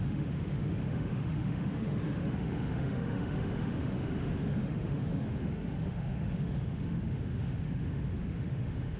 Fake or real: fake